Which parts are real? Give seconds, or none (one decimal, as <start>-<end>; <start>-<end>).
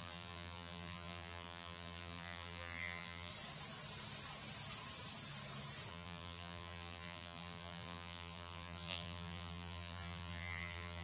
3.3-5.9